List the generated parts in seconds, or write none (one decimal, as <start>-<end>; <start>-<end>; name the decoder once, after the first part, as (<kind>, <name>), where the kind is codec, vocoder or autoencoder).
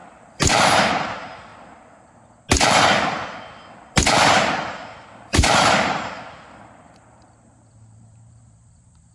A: 0.0-1.5 (vocoder, BigVGAN v2); 5.0-9.1